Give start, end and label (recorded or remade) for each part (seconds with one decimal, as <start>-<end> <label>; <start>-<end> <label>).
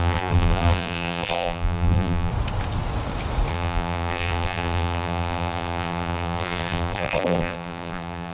0.0-2.3 remade; 2.3-3.5 recorded; 3.5-8.3 remade